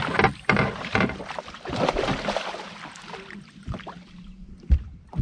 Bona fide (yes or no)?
no